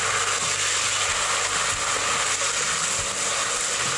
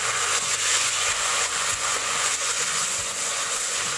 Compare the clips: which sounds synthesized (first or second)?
second